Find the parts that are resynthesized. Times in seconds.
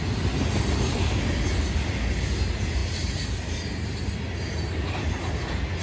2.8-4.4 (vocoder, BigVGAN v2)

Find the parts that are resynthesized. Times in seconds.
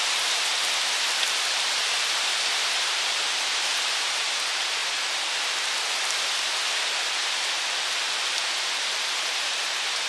0.0-0.5 (vocoder, BigVGAN v2); 1.5-4.8; 8.4-10.1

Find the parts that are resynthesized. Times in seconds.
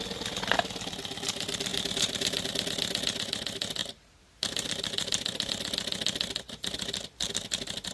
1.7-2.5 (vocoder, BigVGAN v2); 3.8-5.5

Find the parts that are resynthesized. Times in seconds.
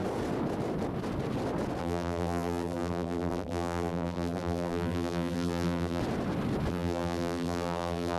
1.8-6.0 (vocoder, BigVGAN v2); 6.7-8.2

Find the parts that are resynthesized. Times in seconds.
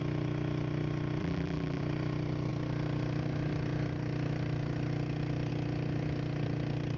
1.2-1.8 (vocoder, BigVGAN v2)